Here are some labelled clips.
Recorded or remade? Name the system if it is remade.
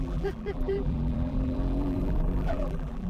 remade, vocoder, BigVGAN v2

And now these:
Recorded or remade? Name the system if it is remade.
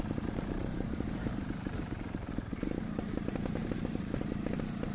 remade, vocoder, BigVGAN v2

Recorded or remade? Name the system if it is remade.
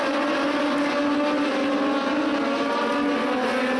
recorded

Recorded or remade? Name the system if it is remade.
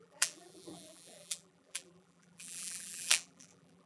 remade, vocoder, BigVGAN v2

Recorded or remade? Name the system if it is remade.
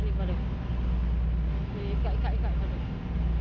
recorded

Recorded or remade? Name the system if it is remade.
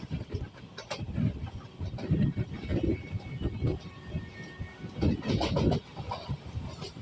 recorded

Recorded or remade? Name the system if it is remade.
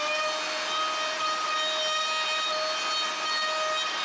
recorded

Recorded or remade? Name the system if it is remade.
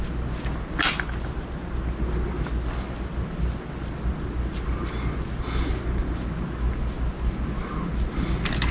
recorded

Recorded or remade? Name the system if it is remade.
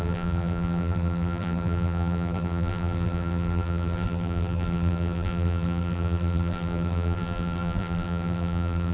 remade, vocoder, BigVGAN v2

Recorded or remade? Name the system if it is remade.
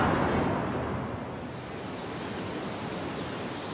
recorded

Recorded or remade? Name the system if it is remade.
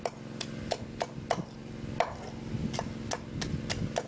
recorded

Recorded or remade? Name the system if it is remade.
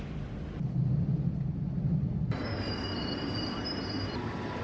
recorded